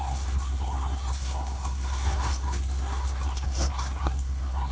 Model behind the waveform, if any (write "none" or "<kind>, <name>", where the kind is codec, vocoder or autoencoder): codec, SNAC